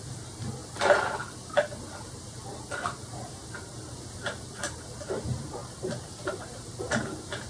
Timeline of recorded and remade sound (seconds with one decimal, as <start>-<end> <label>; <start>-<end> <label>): 0.0-7.5 recorded